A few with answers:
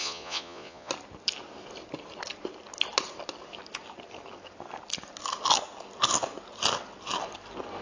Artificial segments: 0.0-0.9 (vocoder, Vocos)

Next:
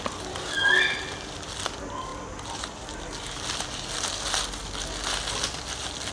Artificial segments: none

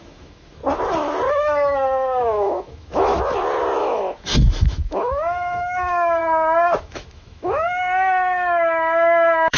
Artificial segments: 0.0-0.6 (autoencoder, DAC-VAE); 1.3-3.1; 3.8-6.2; 6.8-9.6

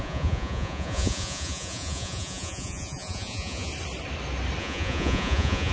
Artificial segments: 0.0-3.7 (vocoder, Vocos); 4.6-5.7

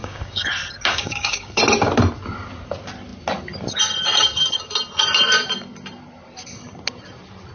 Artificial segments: 0.0-0.5 (codec, DAC); 0.9-1.6